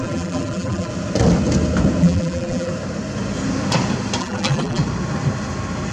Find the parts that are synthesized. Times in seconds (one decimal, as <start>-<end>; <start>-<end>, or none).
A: 0.0-0.9; 2.0-2.7; 4.2-4.8